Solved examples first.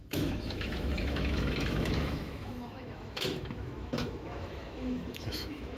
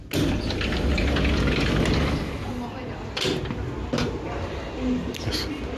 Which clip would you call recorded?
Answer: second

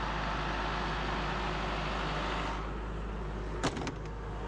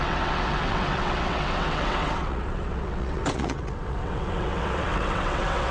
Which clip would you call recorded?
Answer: first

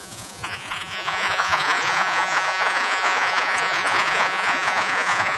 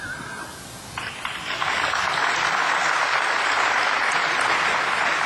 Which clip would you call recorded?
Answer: second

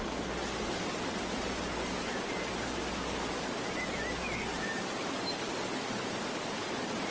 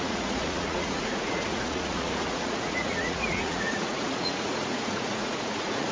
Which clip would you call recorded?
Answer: first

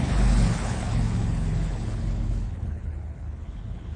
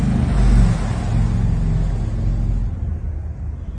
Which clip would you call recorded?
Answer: second